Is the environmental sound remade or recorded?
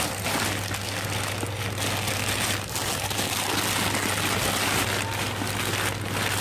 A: recorded